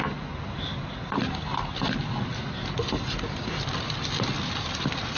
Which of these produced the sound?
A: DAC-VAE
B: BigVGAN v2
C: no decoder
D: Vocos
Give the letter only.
C